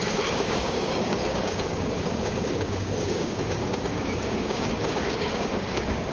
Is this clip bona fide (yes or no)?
no